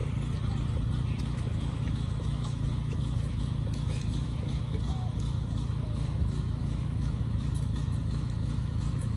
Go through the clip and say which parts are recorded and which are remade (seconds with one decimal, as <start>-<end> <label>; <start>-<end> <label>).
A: 0.0-1.2 recorded; 1.2-9.2 remade